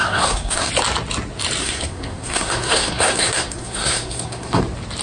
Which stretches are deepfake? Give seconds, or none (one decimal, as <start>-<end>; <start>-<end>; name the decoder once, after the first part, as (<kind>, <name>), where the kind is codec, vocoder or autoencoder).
0.0-0.7 (codec, SNAC); 1.6-4.6